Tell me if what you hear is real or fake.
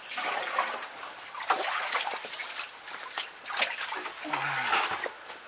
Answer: real